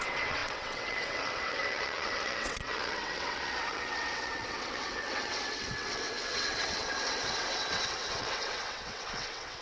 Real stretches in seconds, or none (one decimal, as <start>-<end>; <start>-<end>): none